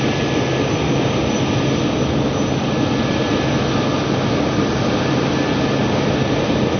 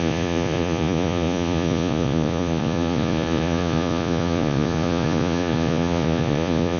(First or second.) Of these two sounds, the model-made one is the second